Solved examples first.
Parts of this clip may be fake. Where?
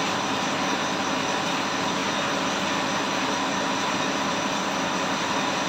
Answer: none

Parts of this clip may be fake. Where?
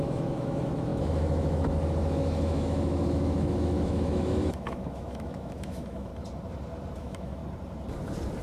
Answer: 0.0-6.1; 7.0-7.4